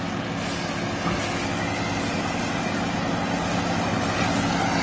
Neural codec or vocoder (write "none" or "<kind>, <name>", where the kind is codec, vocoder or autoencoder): none